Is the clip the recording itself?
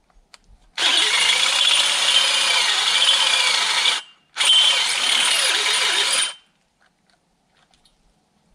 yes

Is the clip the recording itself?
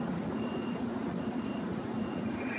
no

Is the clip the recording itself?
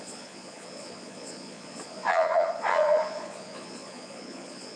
no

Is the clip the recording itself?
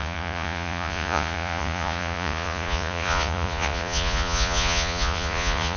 no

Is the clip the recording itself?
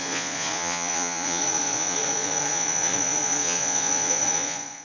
no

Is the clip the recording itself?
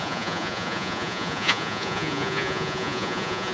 no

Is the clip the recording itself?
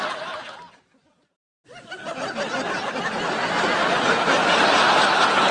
yes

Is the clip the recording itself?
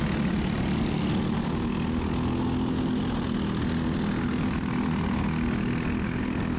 yes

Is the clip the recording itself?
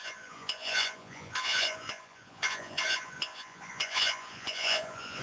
no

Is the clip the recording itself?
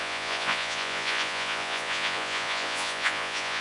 no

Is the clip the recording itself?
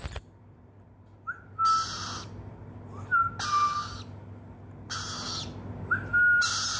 yes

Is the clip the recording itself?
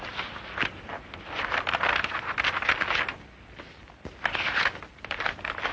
yes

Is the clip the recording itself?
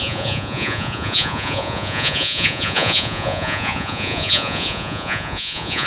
no